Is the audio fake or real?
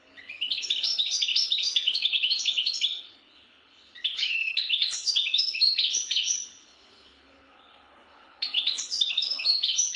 fake